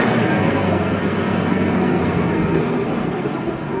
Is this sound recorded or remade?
remade